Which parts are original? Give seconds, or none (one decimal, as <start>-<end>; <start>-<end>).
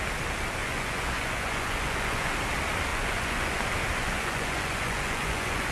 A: 0.0-0.6; 2.3-2.9; 3.6-4.0